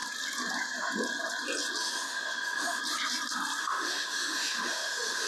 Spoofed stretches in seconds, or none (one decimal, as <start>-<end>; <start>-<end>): 1.8-2.8; 3.6-5.3